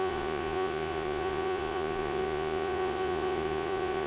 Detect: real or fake fake